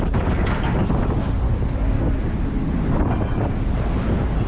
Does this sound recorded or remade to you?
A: recorded